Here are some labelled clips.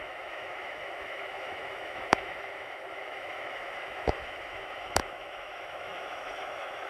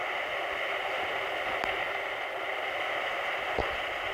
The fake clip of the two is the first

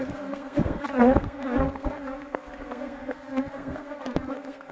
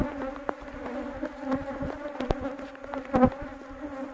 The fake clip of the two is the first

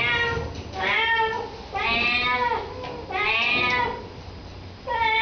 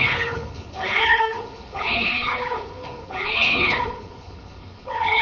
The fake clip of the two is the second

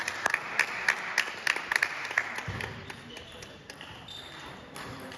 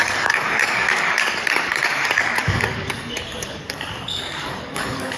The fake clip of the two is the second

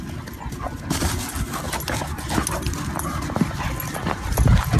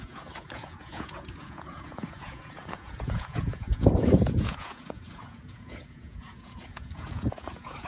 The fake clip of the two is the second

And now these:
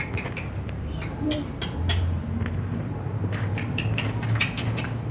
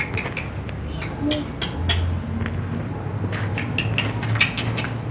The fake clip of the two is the first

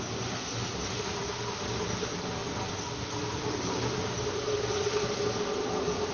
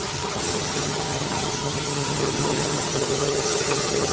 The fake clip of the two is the second